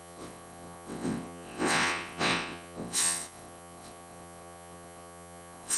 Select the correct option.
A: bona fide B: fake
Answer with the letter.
B